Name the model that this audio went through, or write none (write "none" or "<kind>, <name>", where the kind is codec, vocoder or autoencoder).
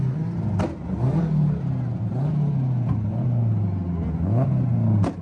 none